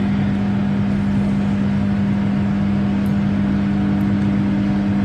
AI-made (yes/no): no